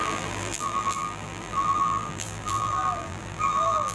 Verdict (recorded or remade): remade